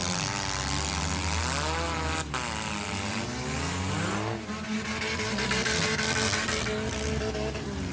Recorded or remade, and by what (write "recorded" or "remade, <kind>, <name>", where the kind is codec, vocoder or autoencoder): recorded